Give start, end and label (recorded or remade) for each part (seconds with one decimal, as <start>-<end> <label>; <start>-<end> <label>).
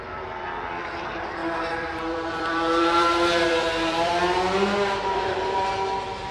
0.0-1.4 recorded; 1.4-4.1 remade; 4.1-6.3 recorded